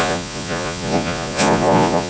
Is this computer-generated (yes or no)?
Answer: yes